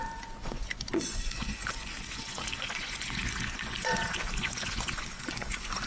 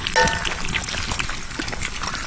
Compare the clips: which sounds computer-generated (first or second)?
first